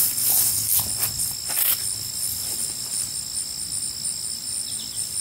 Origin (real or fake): real